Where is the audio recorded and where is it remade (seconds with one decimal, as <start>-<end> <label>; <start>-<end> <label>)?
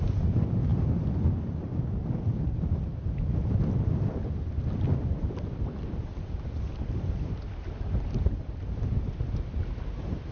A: 0.0-0.7 recorded; 0.7-3.5 remade; 3.5-10.3 recorded